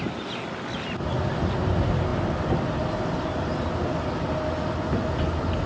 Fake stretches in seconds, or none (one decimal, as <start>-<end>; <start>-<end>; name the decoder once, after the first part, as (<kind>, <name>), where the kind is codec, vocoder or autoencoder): none